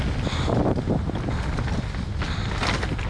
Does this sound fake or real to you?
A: real